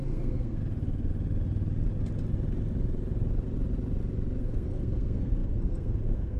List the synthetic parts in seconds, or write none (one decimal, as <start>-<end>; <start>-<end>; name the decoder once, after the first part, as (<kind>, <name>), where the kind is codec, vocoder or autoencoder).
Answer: 0.0-0.6 (codec, SNAC); 4.4-6.4